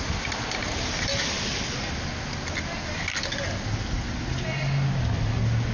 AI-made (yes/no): no